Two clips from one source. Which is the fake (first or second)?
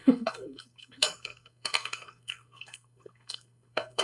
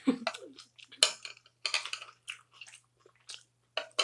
first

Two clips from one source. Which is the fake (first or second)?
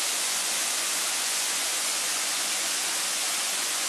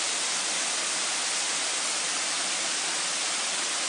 first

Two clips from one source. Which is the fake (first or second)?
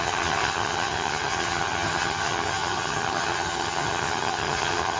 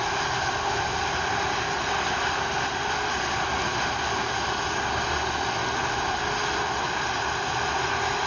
first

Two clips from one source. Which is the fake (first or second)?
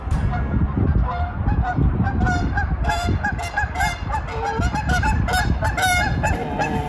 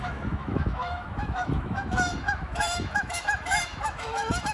second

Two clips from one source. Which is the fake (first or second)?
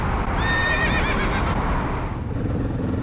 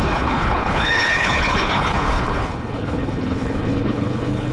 second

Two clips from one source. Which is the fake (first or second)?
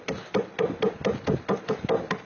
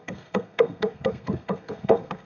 second